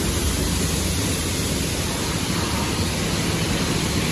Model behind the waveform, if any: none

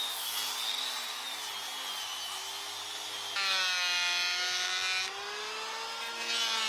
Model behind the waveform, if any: none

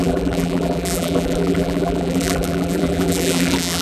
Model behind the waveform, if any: vocoder, BigVGAN v2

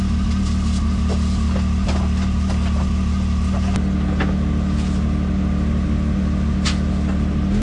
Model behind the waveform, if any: none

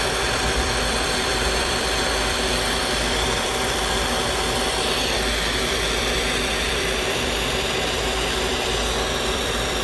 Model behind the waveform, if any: vocoder, BigVGAN v2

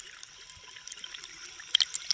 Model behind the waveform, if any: none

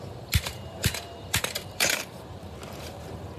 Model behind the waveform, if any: vocoder, BigVGAN v2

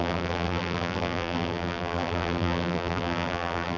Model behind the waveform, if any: vocoder, BigVGAN v2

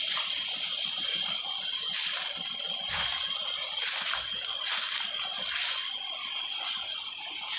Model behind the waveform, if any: none